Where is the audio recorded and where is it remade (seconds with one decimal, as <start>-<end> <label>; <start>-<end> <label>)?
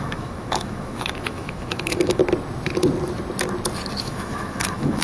0.0-2.2 remade; 2.2-4.0 recorded; 4.0-5.0 remade